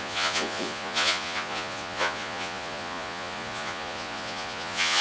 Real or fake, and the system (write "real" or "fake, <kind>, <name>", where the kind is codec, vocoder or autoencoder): fake, vocoder, Vocos